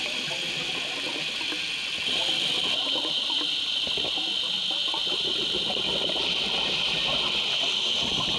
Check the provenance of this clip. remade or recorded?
remade